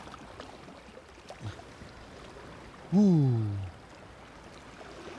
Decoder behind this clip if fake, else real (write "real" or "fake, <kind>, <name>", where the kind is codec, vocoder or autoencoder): real